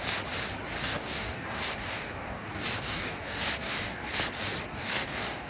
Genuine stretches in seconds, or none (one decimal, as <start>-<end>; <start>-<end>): 0.0-0.8; 4.1-4.7